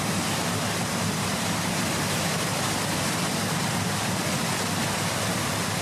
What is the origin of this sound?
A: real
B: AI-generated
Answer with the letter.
B